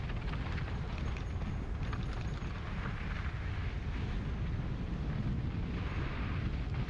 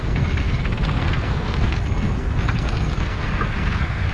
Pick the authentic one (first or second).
first